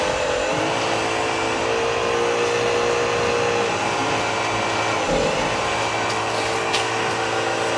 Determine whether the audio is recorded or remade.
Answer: recorded